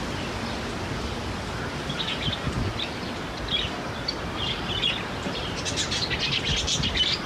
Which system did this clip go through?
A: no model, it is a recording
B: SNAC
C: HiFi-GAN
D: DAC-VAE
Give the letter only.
A